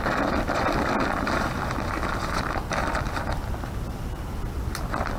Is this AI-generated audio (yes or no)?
no